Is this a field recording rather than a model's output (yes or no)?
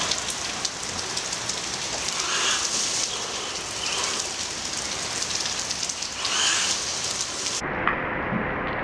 yes